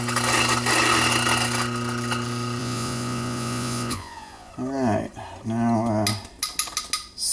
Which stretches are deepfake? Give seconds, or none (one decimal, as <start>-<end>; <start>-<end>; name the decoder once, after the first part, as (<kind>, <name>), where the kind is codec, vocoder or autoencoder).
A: 2.6-4.5 (vocoder, Vocos)